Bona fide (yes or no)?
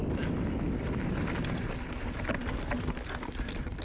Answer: yes